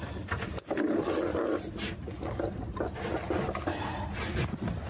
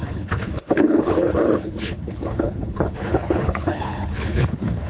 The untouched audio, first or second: first